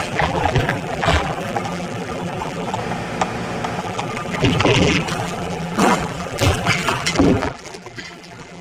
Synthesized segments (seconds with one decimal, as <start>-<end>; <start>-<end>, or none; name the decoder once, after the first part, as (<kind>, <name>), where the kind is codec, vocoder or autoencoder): 0.0-2.8 (vocoder, BigVGAN v2); 3.8-8.6